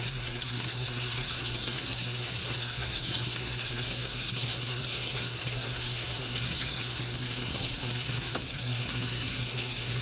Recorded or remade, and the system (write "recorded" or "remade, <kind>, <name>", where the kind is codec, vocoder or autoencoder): remade, codec, SNAC